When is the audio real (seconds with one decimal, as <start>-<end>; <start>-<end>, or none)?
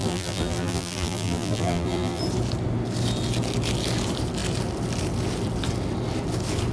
2.2-6.7